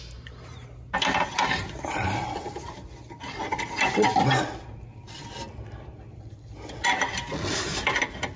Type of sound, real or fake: real